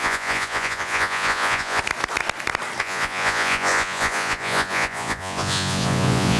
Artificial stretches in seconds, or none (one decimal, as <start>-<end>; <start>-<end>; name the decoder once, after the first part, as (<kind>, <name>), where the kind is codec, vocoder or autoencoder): 0.0-1.8 (vocoder, Vocos); 2.8-6.4